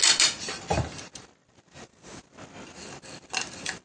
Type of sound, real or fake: real